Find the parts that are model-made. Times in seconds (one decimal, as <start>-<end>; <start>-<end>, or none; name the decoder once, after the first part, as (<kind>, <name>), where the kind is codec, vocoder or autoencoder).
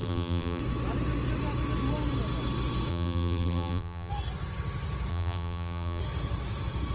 0.0-0.6 (vocoder, BigVGAN v2); 2.9-4.1; 5.1-6.0